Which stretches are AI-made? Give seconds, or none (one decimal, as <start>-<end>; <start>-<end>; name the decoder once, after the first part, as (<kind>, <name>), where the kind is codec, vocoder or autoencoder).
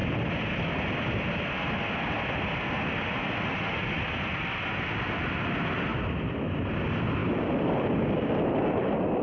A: none